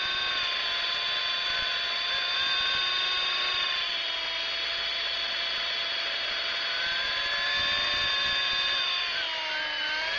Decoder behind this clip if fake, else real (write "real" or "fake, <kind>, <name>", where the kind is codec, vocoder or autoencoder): real